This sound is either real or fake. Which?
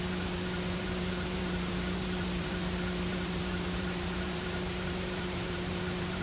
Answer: fake